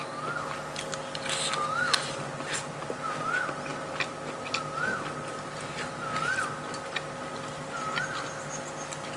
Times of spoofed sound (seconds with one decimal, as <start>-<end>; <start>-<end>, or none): none